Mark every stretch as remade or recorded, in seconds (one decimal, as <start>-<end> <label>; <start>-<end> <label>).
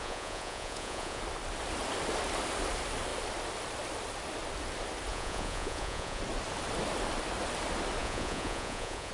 0.0-1.2 remade; 1.2-5.1 recorded; 5.1-6.2 remade; 6.2-8.0 recorded; 8.0-9.1 remade